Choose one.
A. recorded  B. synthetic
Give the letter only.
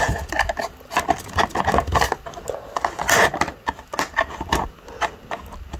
A